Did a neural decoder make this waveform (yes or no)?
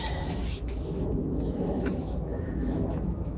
yes